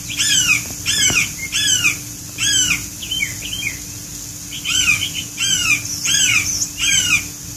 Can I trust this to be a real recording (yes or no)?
yes